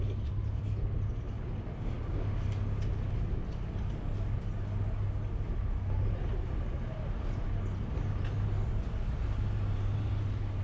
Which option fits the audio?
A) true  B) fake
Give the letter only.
A